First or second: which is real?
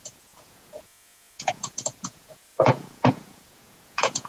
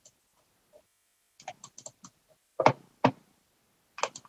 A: second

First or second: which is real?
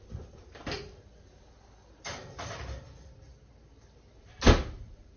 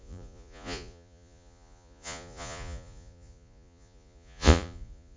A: first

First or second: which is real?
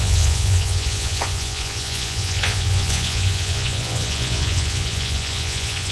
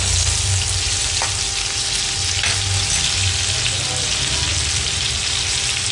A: second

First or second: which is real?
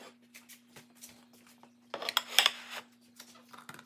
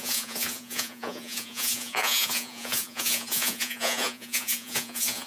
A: first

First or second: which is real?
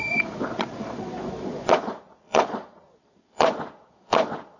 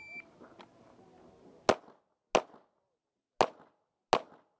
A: second